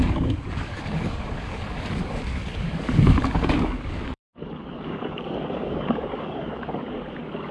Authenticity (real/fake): fake